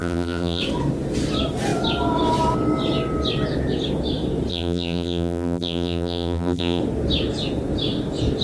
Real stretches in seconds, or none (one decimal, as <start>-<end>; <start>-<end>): 0.6-4.5; 6.8-8.4